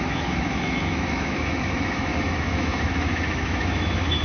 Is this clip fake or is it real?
fake